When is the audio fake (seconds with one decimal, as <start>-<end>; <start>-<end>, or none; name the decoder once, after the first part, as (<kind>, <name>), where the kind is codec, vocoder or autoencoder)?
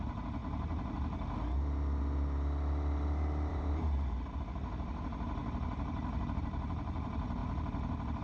0.0-0.4 (vocoder, BigVGAN v2); 3.5-7.4